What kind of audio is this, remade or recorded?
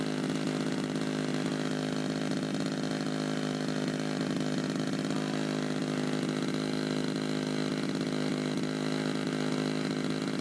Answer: recorded